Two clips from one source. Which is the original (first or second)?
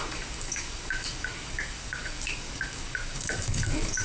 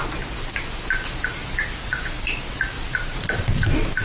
second